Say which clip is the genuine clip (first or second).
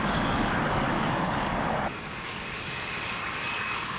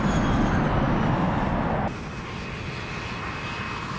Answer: second